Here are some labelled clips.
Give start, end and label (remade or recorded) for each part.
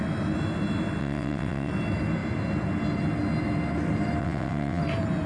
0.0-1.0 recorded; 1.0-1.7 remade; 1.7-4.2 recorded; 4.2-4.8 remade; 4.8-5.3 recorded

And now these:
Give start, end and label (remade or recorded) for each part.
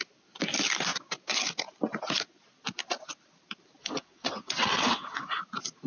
0.0-3.8 recorded; 3.8-5.4 remade; 5.4-5.9 recorded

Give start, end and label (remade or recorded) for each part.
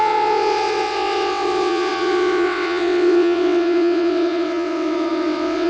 0.0-5.7 remade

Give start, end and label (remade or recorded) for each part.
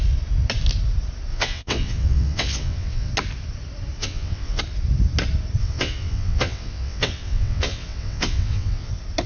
0.0-1.3 recorded; 1.3-3.1 remade; 3.1-4.0 recorded; 4.0-4.6 remade; 4.6-5.6 recorded; 5.6-8.9 remade; 8.9-9.3 recorded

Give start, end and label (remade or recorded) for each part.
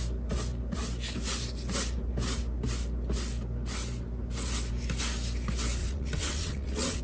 0.0-5.8 recorded; 5.8-7.0 remade